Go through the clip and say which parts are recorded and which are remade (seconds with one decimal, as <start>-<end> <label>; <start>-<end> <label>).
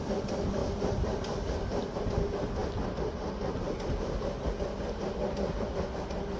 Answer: 0.0-6.4 recorded